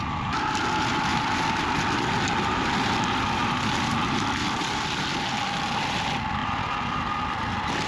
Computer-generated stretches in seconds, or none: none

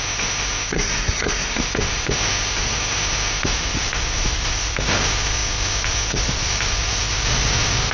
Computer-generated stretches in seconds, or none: 0.7-1.6 (codec, SNAC)

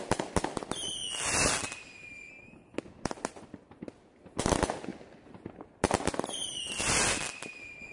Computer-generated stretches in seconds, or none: none

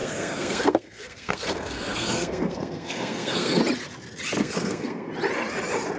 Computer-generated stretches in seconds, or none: 0.0-3.6 (codec, SNAC); 4.4-5.1

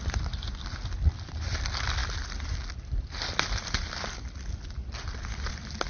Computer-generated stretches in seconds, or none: none